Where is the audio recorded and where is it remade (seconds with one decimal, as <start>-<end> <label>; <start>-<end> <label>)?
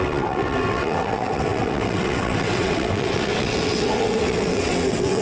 0.0-5.2 remade